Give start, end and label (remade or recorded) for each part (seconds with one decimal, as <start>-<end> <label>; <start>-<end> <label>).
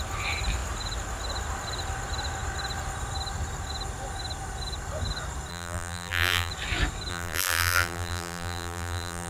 0.0-5.5 recorded; 5.5-6.5 remade; 6.5-7.1 recorded; 7.1-9.3 remade